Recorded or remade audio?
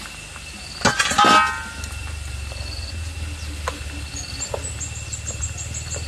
recorded